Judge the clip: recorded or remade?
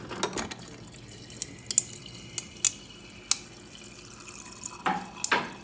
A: recorded